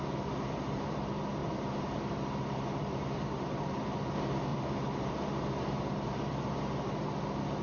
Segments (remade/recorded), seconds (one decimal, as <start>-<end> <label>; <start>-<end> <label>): 0.0-1.4 recorded; 1.4-2.0 remade; 2.0-2.8 recorded; 2.8-3.8 remade; 3.8-4.5 recorded; 4.5-5.1 remade; 5.1-7.6 recorded